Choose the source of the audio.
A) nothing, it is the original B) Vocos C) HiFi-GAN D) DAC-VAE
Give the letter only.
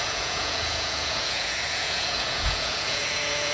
B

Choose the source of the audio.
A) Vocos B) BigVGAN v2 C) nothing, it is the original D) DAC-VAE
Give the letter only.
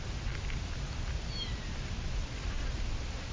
C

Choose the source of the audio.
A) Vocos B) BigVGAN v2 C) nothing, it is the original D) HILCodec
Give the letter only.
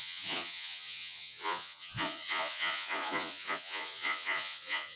A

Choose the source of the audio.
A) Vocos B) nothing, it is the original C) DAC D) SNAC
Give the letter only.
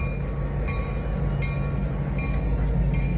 B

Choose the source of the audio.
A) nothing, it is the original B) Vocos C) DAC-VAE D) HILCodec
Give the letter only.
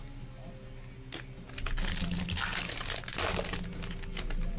A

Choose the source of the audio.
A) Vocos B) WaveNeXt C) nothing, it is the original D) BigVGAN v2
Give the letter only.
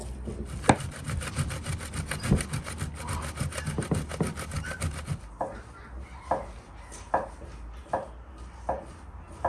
C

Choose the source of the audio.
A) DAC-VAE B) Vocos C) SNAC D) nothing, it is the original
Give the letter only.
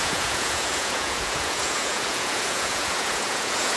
B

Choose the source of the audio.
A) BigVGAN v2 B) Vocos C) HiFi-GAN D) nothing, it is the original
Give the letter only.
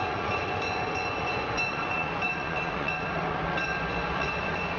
B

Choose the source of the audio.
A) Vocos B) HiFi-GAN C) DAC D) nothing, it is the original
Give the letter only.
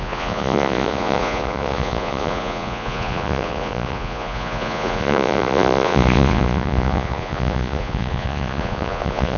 A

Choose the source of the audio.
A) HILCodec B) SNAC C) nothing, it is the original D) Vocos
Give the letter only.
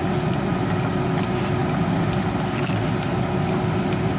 C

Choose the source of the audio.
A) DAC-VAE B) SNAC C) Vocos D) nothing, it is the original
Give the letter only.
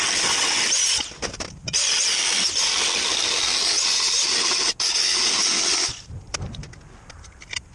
D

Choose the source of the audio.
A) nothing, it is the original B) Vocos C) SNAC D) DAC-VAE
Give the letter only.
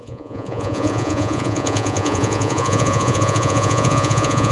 B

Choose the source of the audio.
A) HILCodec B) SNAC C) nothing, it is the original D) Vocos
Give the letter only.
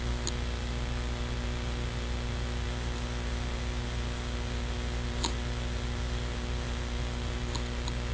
C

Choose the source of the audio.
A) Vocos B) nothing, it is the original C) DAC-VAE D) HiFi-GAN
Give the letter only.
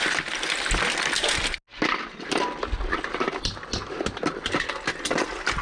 B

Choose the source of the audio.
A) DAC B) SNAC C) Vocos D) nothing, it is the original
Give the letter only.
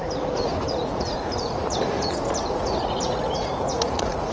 C